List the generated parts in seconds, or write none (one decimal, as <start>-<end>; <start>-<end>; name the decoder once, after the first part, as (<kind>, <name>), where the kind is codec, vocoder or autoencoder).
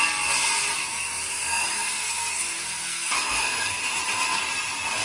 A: 0.8-3.8 (codec, SNAC)